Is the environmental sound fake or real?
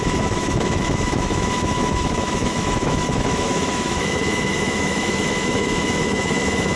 fake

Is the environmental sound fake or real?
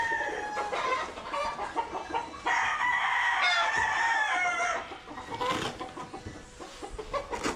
real